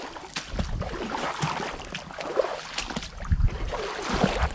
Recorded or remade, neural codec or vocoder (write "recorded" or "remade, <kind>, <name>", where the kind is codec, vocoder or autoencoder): recorded